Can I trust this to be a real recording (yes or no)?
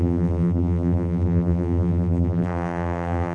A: no